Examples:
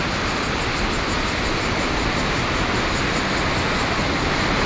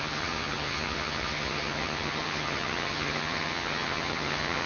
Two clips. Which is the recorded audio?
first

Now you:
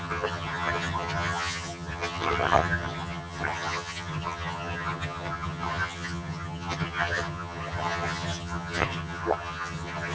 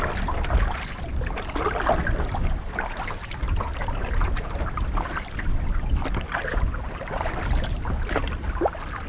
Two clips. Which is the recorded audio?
second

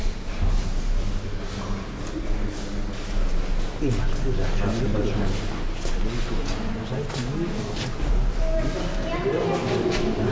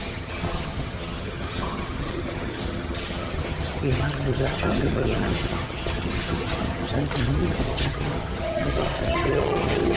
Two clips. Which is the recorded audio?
first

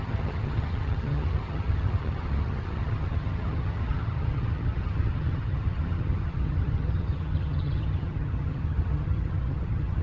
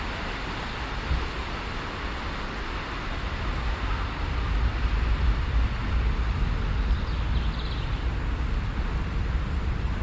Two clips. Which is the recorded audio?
second